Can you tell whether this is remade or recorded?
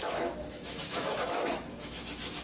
remade